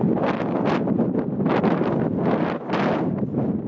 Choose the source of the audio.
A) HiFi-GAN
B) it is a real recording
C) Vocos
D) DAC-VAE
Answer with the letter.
B